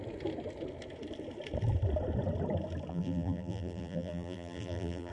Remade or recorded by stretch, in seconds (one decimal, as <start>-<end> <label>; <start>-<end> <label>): 0.0-2.9 recorded; 2.9-5.1 remade